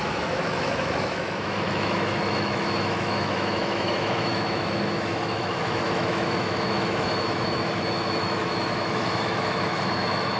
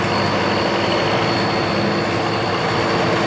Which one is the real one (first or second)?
second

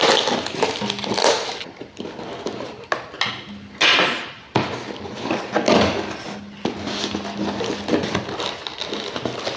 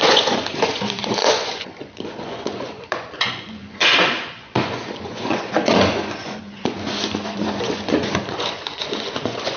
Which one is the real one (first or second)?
first